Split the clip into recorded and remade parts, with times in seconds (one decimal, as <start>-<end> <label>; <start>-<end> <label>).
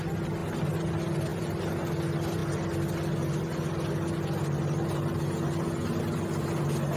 0.0-1.3 recorded; 1.3-1.9 remade; 1.9-7.0 recorded